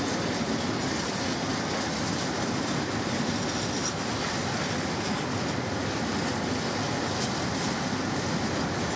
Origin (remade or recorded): recorded